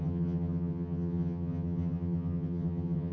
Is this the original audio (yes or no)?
no